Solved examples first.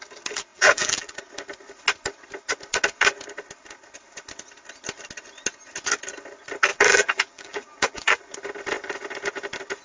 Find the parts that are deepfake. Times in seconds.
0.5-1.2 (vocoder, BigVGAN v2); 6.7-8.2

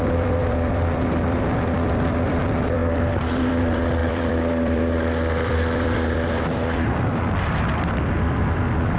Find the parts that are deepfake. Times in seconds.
0.0-9.0 (vocoder, BigVGAN v2)

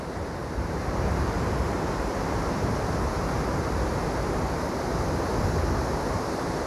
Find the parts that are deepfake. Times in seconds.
0.4-3.9 (vocoder, BigVGAN v2)

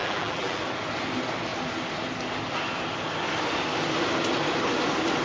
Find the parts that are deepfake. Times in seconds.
0.0-0.6 (vocoder, BigVGAN v2)

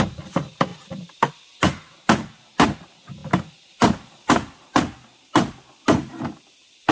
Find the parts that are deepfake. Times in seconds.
0.7-1.3 (vocoder, BigVGAN v2)

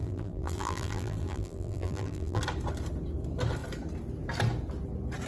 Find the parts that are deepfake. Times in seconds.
0.0-2.4 (vocoder, BigVGAN v2)

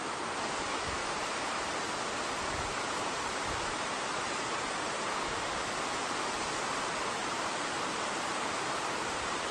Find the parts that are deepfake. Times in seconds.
1.0-4.2 (vocoder, BigVGAN v2); 7.2-8.5